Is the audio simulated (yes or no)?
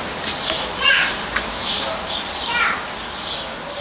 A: no